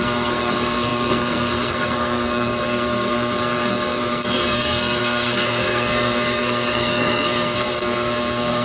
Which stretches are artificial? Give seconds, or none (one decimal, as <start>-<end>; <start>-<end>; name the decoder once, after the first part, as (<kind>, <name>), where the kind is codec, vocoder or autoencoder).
0.0-8.6 (codec, SNAC)